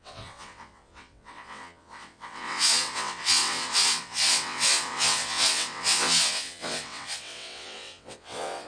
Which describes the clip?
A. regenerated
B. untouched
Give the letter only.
A